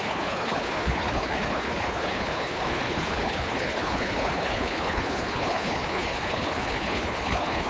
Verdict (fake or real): fake